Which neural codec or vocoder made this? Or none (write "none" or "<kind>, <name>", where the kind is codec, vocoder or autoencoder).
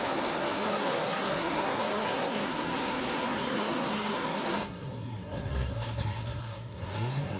codec, SNAC